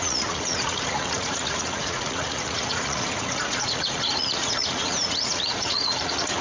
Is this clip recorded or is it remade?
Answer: remade